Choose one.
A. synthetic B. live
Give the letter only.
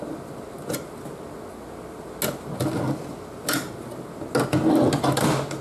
B